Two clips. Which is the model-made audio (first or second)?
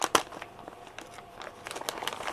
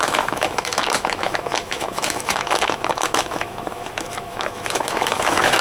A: second